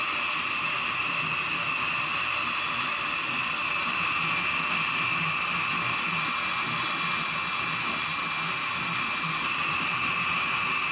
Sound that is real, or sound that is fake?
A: real